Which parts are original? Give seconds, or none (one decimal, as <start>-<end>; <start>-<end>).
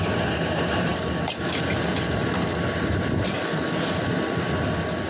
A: 0.0-5.1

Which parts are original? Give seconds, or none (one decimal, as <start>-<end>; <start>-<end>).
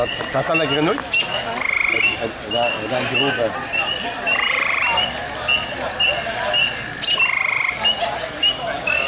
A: 0.0-9.1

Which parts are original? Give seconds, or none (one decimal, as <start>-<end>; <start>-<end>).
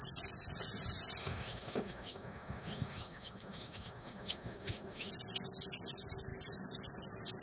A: 0.0-1.2; 5.1-7.4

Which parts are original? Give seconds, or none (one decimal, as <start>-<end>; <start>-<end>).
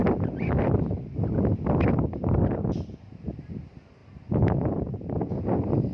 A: 0.0-5.9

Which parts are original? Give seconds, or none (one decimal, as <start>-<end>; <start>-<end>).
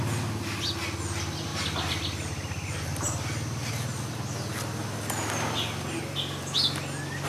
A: 0.0-7.3